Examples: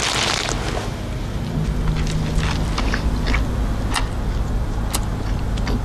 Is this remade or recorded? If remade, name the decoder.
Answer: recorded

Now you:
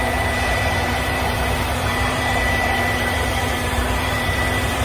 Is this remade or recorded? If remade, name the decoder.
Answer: remade, vocoder, BigVGAN v2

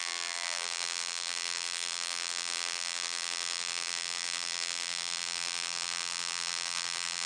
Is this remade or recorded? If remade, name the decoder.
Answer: remade, vocoder, BigVGAN v2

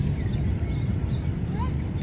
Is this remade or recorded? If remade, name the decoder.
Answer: recorded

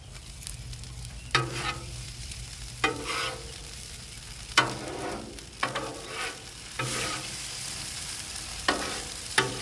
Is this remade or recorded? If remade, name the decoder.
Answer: remade, vocoder, BigVGAN v2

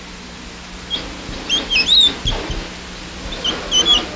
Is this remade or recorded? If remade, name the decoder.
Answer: recorded